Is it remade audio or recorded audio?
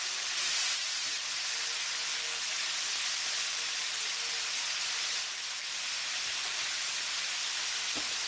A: recorded